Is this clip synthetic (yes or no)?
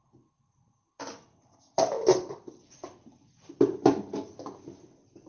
no